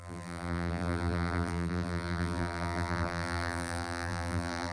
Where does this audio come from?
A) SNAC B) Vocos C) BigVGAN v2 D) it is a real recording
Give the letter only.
C